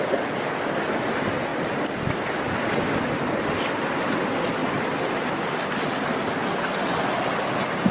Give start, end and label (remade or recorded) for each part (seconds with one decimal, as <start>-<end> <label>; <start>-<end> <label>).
0.0-7.9 recorded